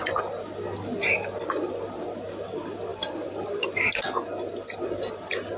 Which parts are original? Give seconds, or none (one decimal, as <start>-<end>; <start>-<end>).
0.0-2.9; 3.9-5.6